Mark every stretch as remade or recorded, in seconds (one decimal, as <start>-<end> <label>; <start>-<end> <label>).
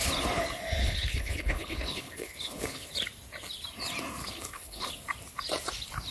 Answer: 0.0-0.8 recorded; 0.8-2.9 remade; 2.9-4.2 recorded; 4.2-4.9 remade; 4.9-6.1 recorded